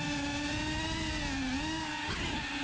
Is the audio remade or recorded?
recorded